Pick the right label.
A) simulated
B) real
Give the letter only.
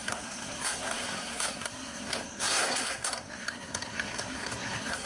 A